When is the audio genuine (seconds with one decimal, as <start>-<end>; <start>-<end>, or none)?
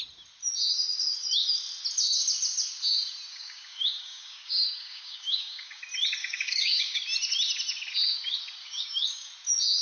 0.0-3.3; 5.8-6.2; 7.0-8.6; 9.3-9.8